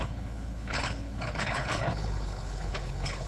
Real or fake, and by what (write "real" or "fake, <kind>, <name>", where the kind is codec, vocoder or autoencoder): fake, codec, HILCodec